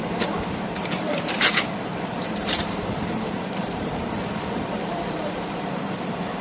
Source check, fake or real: fake